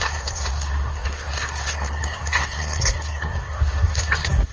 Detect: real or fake fake